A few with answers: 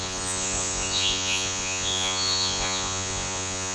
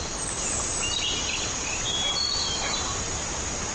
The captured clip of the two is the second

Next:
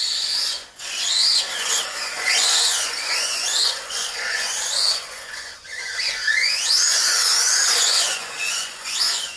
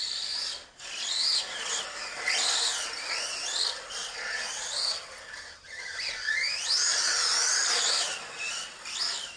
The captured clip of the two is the second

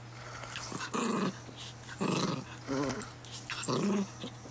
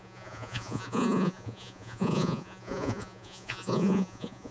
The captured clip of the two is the first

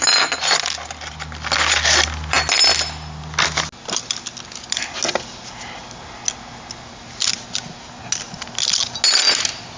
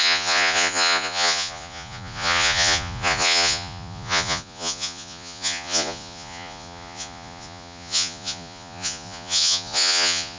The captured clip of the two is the first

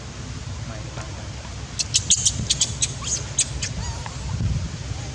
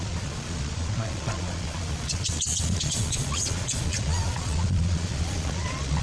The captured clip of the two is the first